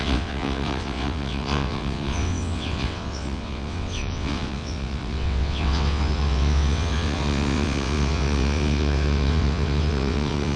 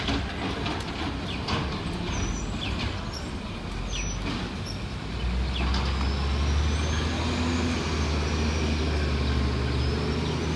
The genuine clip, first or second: second